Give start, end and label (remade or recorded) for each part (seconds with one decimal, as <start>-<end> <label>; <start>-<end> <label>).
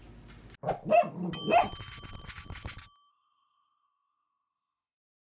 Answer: 0.0-3.1 recorded; 3.1-5.2 remade